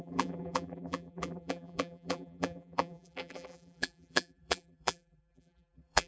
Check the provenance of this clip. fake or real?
fake